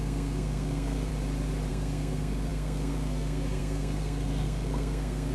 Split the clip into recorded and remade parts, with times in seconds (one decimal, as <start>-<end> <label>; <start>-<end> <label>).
0.0-1.1 remade; 1.1-1.7 recorded; 1.7-5.3 remade